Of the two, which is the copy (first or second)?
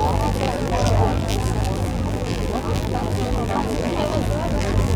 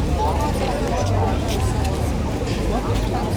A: first